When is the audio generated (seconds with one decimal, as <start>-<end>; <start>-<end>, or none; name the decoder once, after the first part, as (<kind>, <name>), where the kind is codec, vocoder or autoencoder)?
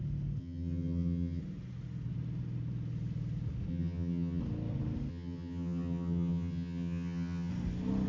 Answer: 0.4-1.4 (vocoder, HiFi-GAN); 3.7-4.4; 5.1-7.5